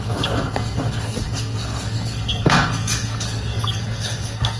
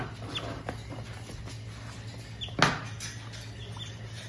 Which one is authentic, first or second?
second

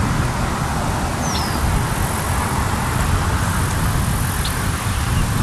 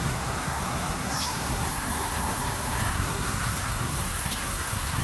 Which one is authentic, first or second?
first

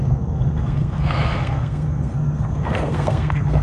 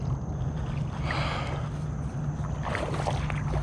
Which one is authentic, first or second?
second